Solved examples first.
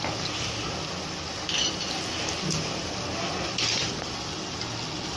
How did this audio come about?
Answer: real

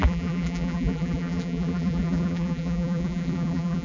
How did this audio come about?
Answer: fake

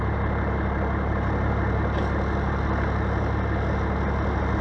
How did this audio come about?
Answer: real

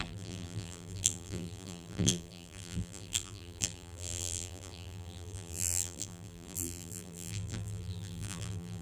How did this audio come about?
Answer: fake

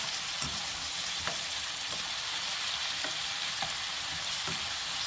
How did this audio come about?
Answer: fake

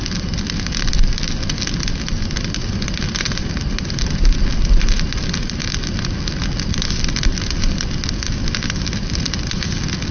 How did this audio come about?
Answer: real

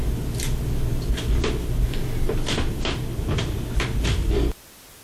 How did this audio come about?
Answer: real